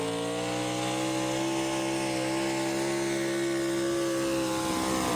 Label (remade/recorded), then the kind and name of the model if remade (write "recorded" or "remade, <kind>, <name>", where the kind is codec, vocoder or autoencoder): recorded